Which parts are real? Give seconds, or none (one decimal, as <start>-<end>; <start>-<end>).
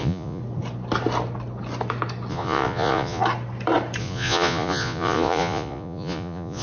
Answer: 0.4-2.3; 3.2-4.0